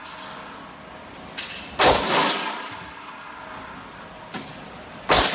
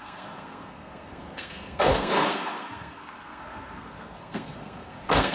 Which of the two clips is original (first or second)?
first